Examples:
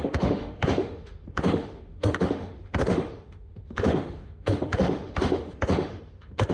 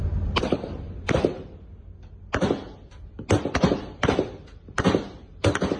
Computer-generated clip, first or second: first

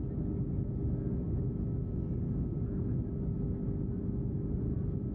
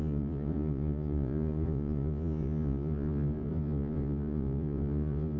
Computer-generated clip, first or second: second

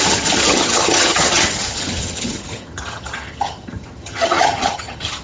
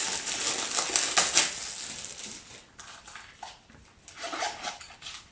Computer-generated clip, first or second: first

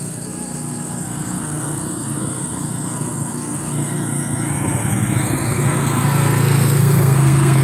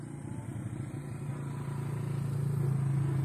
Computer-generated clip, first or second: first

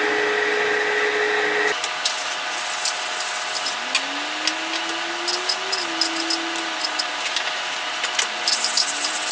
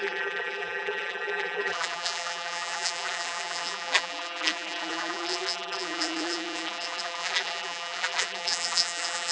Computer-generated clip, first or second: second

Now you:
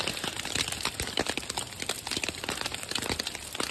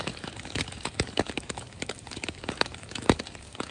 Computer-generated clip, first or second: second